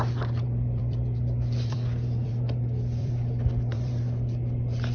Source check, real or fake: fake